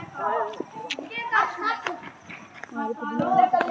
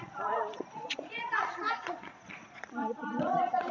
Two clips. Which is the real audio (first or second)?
first